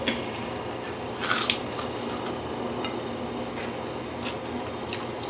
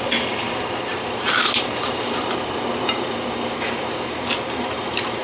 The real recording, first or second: first